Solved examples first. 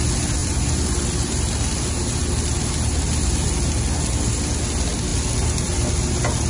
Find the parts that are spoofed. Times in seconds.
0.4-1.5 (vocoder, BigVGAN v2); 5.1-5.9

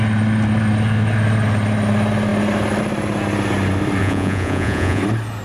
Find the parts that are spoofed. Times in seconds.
4.0-5.0 (vocoder, Vocos)

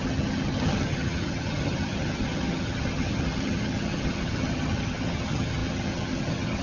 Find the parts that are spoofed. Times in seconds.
0.0-6.6 (vocoder, HiFi-GAN)

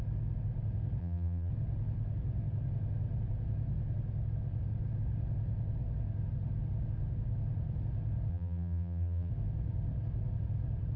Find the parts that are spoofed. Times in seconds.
1.0-1.5 (vocoder, BigVGAN v2); 8.3-9.3

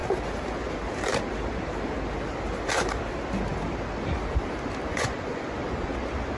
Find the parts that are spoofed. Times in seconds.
4.9-5.5 (vocoder, Vocos)

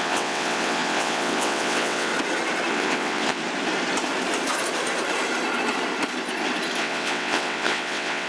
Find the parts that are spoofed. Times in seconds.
0.0-2.1 (vocoder, WaveNeXt); 2.7-3.4; 6.8-8.3